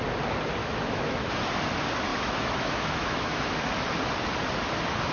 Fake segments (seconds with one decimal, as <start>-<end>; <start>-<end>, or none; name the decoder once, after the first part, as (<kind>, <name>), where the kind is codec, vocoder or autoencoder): 0.6-1.3 (autoencoder, DAC-VAE); 2.1-3.6